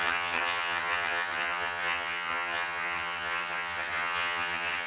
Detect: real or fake fake